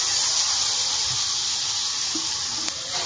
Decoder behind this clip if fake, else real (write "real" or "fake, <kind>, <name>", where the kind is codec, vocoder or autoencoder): real